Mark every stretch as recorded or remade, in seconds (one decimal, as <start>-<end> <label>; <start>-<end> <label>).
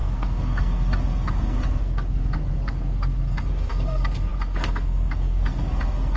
0.0-6.2 remade